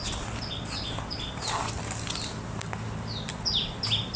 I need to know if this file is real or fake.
real